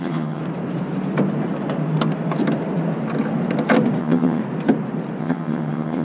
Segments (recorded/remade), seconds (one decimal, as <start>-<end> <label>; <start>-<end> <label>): 0.0-0.4 remade; 0.4-4.0 recorded; 4.0-4.4 remade; 4.4-5.2 recorded; 5.2-6.0 remade